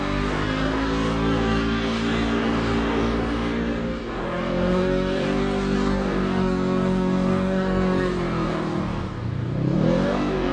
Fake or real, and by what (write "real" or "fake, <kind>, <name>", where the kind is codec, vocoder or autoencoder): fake, codec, DAC